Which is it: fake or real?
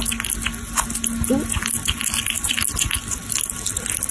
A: real